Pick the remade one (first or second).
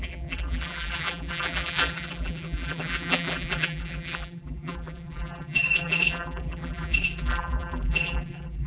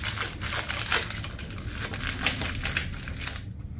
first